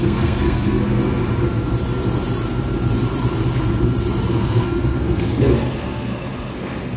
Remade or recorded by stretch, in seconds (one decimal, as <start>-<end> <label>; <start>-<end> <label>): 0.0-1.0 remade; 1.0-4.4 recorded; 4.4-7.0 remade